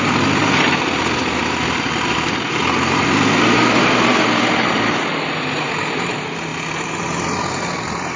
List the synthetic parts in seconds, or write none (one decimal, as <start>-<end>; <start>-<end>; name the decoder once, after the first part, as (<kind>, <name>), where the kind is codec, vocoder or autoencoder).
0.0-1.4 (vocoder, BigVGAN v2); 2.6-4.1; 5.7-8.2